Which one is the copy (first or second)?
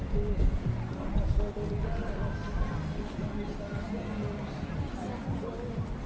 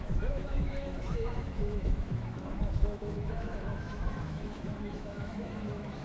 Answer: second